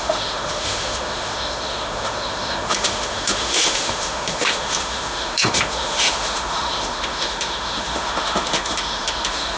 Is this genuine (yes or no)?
no